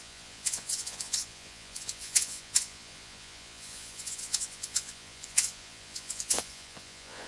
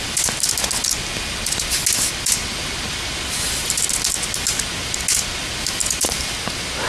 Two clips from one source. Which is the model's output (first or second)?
first